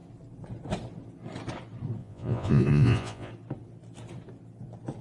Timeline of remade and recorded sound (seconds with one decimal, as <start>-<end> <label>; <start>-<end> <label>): 0.0-2.0 recorded; 2.0-3.3 remade; 3.3-5.0 recorded